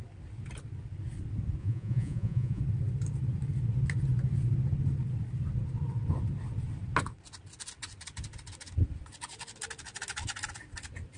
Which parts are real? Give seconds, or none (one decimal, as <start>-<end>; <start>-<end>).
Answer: 0.0-1.6; 2.6-11.2